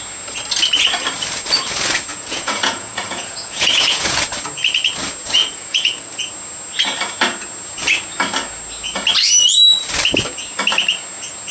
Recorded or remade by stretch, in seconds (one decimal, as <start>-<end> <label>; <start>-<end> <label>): 0.0-2.1 recorded; 2.1-4.2 remade; 4.2-5.4 recorded; 5.4-6.3 remade; 6.3-11.5 recorded